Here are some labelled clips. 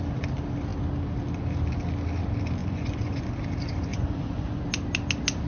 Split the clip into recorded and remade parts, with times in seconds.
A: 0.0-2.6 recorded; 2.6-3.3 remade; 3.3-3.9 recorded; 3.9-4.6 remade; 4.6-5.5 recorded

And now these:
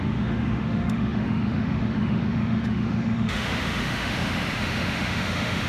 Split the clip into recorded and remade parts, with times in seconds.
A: 0.0-5.7 remade

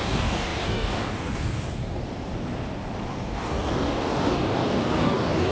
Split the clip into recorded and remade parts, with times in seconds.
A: 0.0-2.0 remade; 2.0-3.1 recorded; 3.1-5.5 remade